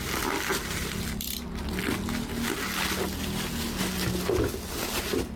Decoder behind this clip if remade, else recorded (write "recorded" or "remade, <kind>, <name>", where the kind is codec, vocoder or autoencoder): recorded